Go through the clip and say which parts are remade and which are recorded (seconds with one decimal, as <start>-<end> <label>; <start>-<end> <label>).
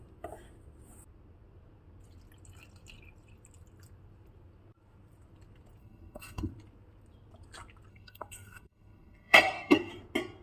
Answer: 0.0-5.8 recorded; 5.8-6.5 remade; 6.5-7.9 recorded; 7.9-9.9 remade; 9.9-10.4 recorded